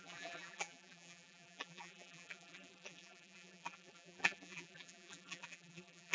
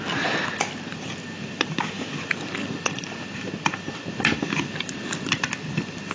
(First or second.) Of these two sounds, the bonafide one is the second